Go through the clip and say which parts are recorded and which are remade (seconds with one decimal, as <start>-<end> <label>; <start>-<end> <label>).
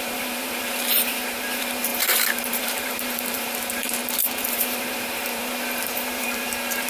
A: 0.0-4.0 remade; 4.0-4.5 recorded; 4.5-6.9 remade